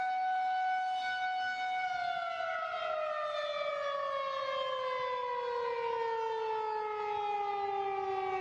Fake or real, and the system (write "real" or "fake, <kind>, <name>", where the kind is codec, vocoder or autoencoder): real